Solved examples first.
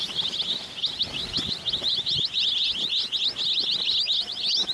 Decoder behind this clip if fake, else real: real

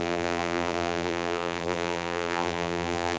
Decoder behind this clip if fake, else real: fake, vocoder, BigVGAN v2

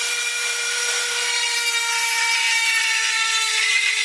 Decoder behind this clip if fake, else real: fake, vocoder, BigVGAN v2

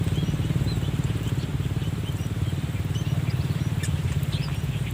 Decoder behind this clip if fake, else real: fake, vocoder, BigVGAN v2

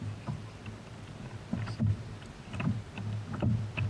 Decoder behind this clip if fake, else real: fake, vocoder, BigVGAN v2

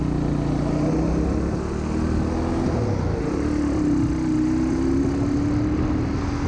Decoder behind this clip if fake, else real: real